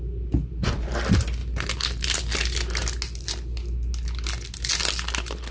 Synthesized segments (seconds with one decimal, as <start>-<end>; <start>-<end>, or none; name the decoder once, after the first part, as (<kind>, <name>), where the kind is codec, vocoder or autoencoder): none